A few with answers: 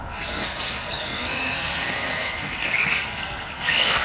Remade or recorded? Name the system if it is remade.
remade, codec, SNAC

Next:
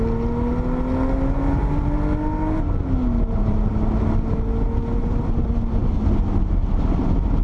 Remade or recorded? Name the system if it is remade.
recorded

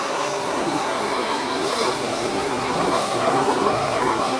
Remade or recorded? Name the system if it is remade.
remade, codec, SNAC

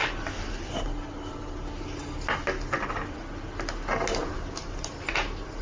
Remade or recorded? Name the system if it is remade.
recorded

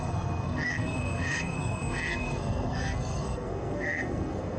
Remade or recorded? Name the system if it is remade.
remade, codec, SNAC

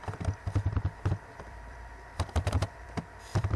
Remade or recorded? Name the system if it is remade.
remade, vocoder, BigVGAN v2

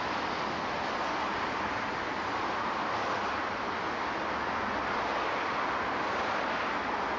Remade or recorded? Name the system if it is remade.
recorded